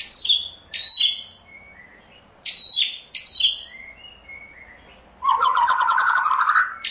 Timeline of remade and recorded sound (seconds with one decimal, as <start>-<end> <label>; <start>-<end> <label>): 0.0-1.9 recorded; 1.9-2.8 remade; 2.8-5.3 recorded; 5.3-6.3 remade; 6.3-6.9 recorded